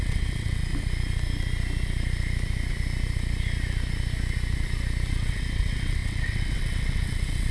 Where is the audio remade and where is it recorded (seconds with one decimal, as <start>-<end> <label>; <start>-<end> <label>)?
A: 0.0-0.6 remade; 0.6-5.1 recorded; 5.1-7.5 remade